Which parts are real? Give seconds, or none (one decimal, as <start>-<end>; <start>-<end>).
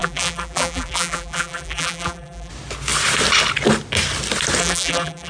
2.5-4.6